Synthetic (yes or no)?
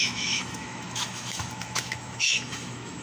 yes